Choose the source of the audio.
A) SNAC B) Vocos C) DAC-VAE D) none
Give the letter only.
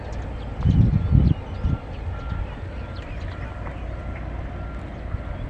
D